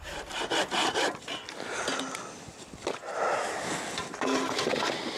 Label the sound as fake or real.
real